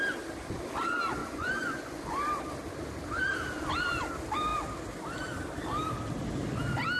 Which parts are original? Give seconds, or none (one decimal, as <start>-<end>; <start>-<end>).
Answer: 0.0-1.2; 2.0-7.0